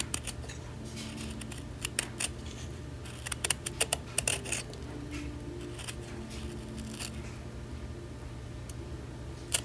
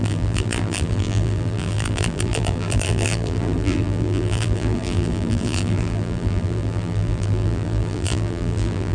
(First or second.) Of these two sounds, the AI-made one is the second